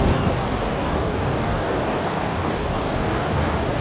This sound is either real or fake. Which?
fake